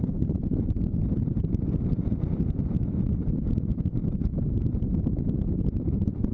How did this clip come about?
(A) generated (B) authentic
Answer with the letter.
B